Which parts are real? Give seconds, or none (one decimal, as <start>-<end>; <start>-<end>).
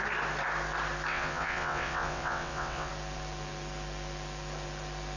0.0-1.1; 2.9-5.2